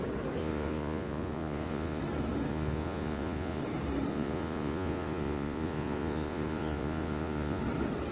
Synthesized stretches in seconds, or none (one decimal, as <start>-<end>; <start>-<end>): 0.4-2.0; 2.5-3.6; 4.1-7.6

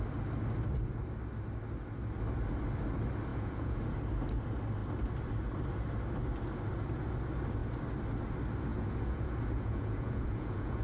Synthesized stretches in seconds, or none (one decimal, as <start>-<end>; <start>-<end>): 3.3-3.8; 8.7-10.8

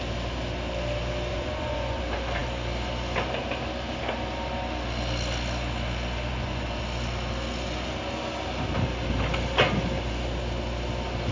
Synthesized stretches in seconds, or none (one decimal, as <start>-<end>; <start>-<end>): 1.3-2.0; 6.3-6.8

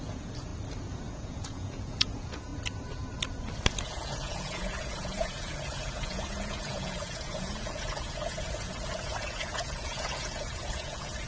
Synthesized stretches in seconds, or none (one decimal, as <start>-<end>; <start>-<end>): 0.0-0.5; 1.1-2.5; 3.8-11.3

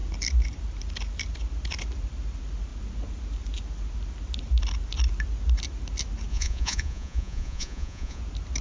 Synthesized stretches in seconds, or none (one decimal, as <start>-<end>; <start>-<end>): 6.3-8.2

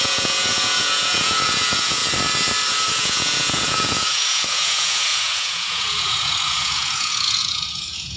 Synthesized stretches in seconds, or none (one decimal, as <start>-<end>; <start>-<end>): 0.0-2.0; 2.9-8.2

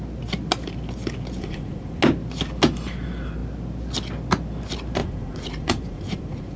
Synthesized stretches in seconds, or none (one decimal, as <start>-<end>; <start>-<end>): 1.4-2.0; 5.0-6.6